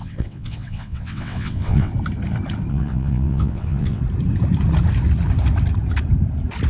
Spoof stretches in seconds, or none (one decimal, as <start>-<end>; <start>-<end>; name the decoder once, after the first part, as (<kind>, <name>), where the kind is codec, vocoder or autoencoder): 0.0-1.9 (vocoder, WaveNeXt); 2.7-4.0